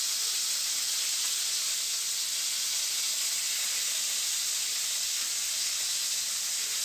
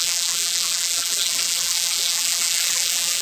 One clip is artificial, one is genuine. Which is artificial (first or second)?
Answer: second